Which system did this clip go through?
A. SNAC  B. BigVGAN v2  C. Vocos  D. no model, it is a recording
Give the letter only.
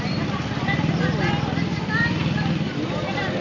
B